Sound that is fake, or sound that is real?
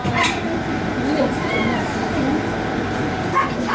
fake